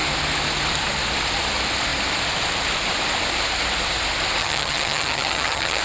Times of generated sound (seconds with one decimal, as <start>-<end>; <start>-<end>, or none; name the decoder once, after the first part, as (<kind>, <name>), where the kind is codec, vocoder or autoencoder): 4.4-5.8 (vocoder, HiFi-GAN)